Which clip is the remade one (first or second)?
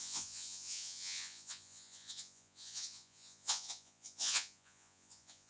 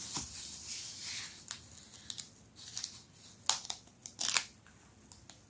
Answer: first